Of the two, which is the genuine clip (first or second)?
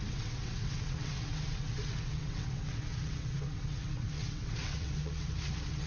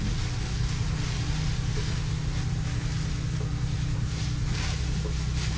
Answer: second